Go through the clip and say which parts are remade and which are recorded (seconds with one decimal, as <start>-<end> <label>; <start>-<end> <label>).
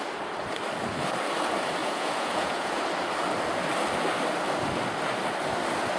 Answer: 0.0-1.8 recorded; 1.8-2.8 remade; 2.8-6.0 recorded